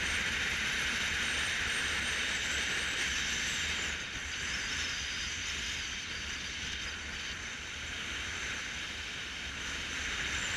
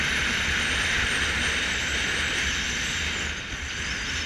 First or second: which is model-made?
first